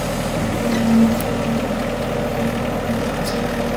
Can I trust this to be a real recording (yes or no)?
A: yes